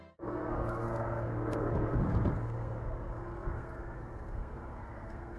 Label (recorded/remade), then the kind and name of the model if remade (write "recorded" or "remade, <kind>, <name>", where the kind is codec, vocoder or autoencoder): remade, codec, SNAC